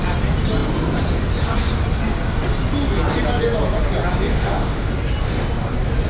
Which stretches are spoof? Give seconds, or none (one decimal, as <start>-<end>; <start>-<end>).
4.3-4.9